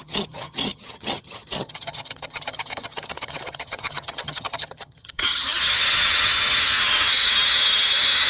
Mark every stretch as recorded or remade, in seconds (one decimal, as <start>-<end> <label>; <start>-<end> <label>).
0.0-8.3 remade